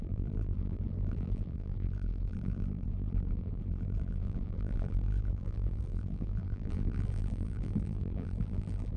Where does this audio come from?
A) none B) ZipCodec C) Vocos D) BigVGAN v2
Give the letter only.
D